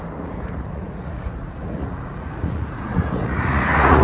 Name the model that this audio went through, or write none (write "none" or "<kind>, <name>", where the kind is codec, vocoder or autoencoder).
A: vocoder, Vocos